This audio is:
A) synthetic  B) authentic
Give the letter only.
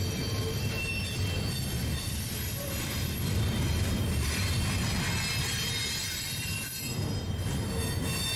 B